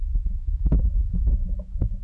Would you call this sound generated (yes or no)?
yes